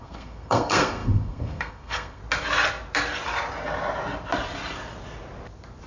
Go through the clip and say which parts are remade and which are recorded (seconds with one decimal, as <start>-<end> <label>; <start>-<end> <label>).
0.0-2.2 remade; 2.2-5.9 recorded